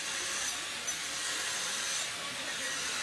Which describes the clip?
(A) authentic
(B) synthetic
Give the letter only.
A